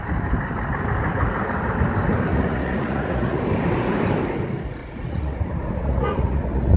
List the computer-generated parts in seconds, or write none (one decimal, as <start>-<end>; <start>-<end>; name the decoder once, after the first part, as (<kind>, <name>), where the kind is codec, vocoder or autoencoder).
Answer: 2.3-3.4 (vocoder, Vocos); 4.8-6.8